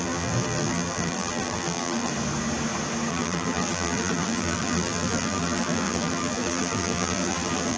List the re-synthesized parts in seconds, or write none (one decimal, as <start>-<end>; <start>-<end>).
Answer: 0.0-2.1; 3.1-7.8